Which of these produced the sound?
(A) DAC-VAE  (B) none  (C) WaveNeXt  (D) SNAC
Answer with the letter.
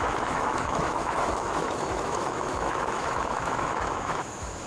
A